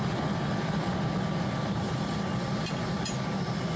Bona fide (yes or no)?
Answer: yes